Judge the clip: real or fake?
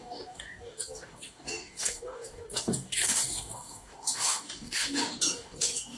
fake